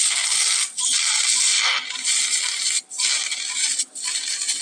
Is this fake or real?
real